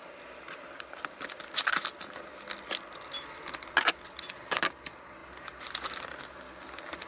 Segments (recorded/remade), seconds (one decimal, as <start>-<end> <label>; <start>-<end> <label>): 0.0-7.1 recorded